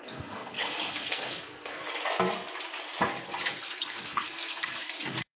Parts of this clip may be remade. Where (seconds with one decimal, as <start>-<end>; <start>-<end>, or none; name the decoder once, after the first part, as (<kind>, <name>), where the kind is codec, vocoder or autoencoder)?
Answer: 0.0-1.8 (codec, SNAC); 3.7-5.4